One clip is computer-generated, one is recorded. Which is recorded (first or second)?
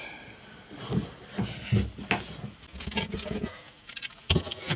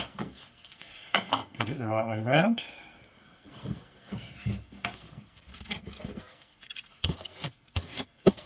first